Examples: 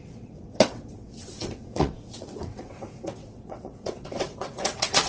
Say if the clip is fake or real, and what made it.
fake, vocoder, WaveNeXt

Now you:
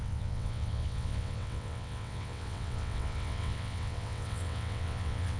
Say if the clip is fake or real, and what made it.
fake, vocoder, WaveNeXt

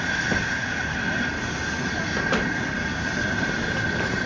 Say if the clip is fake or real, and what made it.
real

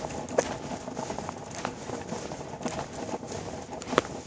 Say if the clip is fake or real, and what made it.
real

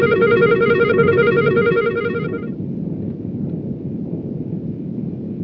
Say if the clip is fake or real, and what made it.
real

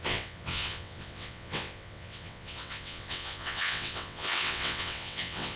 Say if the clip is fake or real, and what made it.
fake, vocoder, WaveNeXt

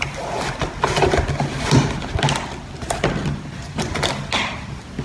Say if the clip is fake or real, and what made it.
real